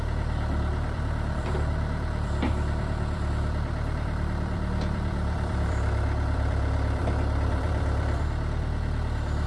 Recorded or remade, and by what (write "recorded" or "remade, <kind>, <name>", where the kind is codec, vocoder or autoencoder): remade, vocoder, BigVGAN v2